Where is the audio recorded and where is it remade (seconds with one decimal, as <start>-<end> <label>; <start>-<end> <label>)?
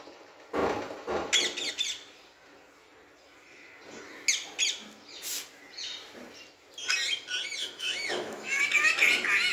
0.0-7.6 recorded; 7.6-8.6 remade; 8.6-9.5 recorded